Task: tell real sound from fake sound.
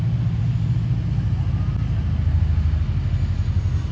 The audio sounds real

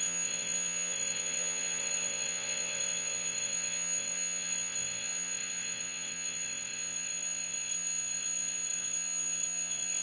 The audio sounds fake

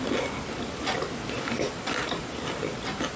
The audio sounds real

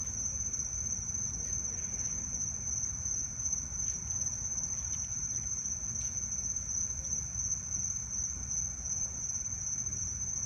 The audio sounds real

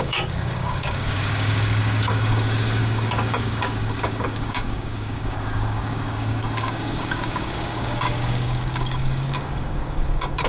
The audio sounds fake